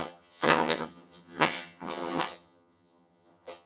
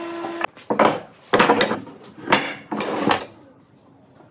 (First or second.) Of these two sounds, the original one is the second